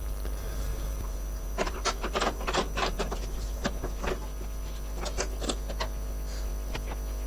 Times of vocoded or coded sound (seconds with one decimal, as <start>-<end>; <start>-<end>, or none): 0.7-4.0